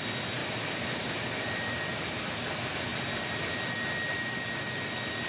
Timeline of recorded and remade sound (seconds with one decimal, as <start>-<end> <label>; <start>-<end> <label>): 0.0-5.3 recorded